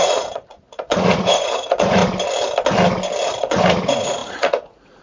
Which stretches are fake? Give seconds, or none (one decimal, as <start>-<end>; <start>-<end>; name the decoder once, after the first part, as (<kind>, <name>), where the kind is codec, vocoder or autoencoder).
0.0-2.0 (vocoder, Vocos); 3.4-5.0